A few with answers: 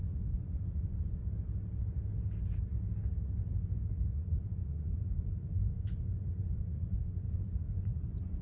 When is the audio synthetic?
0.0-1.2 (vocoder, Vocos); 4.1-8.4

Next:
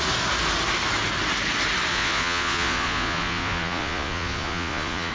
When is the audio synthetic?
1.9-5.1 (vocoder, Vocos)

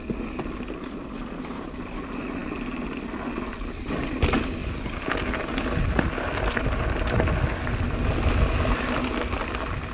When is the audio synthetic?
none

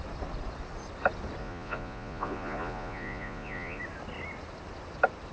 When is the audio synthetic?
1.4-3.8 (vocoder, Vocos)

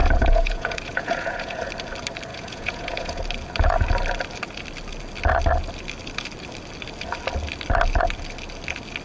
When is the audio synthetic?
0.0-1.7 (vocoder, Vocos); 2.3-3.2

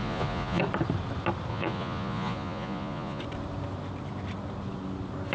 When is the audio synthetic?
0.0-0.6 (vocoder, Vocos); 1.5-3.2

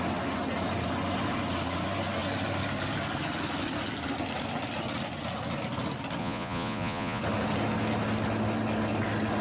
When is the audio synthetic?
6.2-7.2 (vocoder, Vocos)